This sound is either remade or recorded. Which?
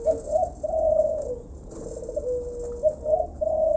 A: recorded